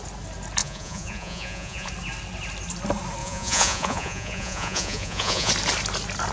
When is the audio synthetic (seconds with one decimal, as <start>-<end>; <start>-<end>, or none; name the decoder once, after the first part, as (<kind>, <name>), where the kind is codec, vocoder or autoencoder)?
0.6-1.9 (vocoder, Vocos); 3.2-5.5